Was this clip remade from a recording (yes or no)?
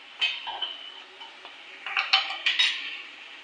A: no